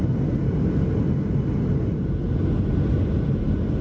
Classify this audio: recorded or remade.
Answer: recorded